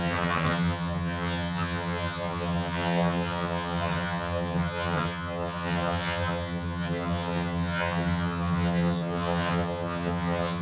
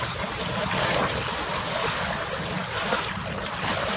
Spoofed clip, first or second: first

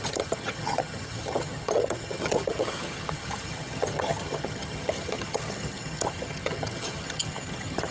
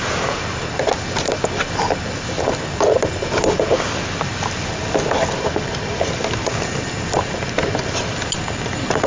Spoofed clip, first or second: first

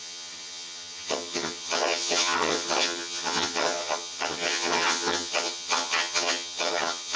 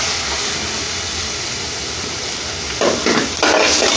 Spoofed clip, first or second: first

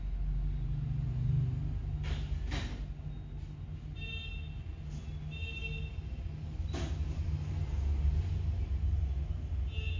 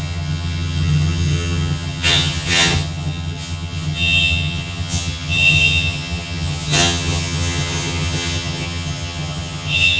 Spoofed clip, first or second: second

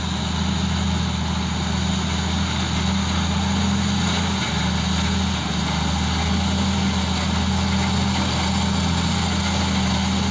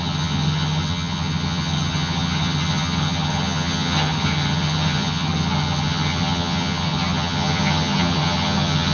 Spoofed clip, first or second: second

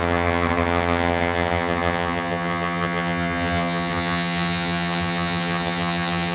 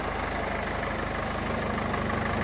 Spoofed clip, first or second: first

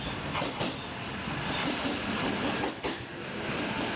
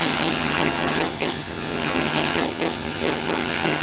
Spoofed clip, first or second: second